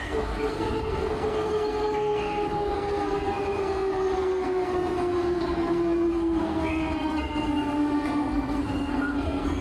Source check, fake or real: fake